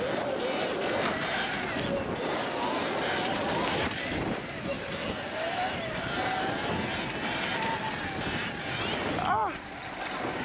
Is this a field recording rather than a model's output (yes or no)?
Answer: yes